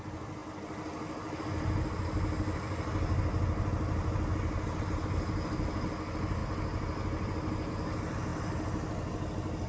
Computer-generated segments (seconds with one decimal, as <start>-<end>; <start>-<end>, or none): none